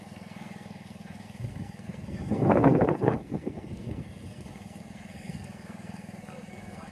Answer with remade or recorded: remade